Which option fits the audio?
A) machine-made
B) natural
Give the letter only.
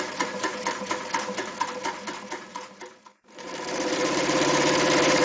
A